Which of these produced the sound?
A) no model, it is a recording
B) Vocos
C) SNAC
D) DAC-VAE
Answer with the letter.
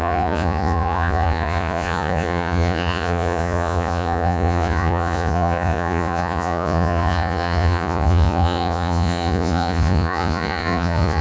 B